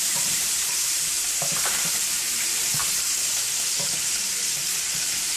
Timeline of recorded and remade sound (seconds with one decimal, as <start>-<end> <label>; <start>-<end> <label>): 0.0-2.8 remade; 2.8-4.3 recorded; 4.3-5.4 remade